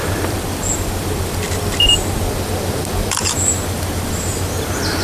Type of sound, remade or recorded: remade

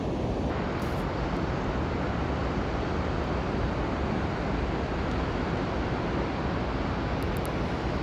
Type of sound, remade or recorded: recorded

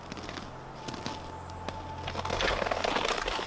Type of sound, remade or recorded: recorded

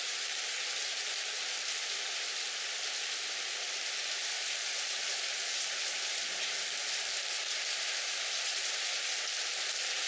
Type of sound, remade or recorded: remade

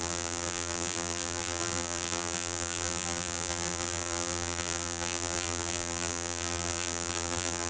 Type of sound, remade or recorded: remade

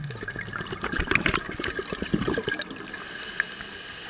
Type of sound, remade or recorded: recorded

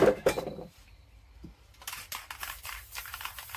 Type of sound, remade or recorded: remade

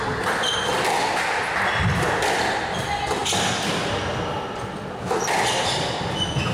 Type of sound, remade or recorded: recorded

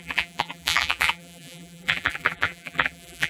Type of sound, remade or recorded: remade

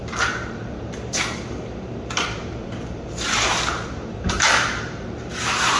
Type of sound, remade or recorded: remade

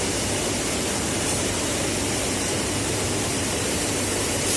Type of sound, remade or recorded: remade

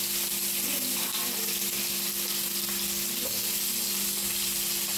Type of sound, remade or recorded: recorded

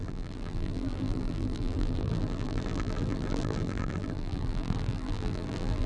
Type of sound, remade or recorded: remade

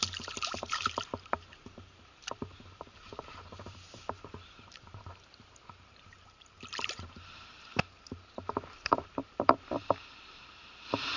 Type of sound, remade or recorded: remade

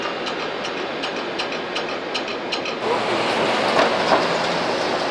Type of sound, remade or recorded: recorded